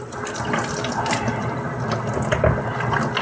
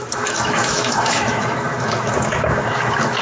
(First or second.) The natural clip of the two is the first